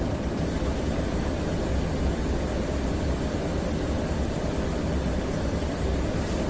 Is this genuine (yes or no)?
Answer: yes